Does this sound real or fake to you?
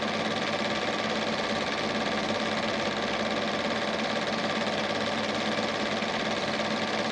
real